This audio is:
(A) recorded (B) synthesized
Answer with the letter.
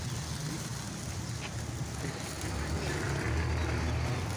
A